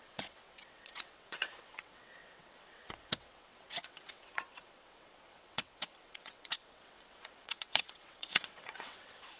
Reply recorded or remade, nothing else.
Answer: remade